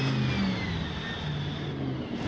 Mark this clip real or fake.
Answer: real